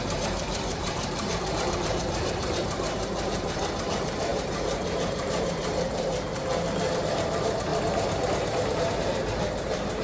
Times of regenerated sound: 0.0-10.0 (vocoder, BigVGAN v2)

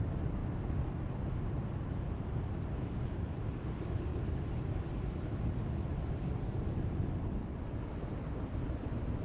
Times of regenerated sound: none